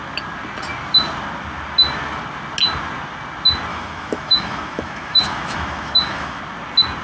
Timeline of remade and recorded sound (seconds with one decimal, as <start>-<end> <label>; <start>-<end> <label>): 0.0-3.7 recorded; 3.7-6.4 remade; 6.4-7.0 recorded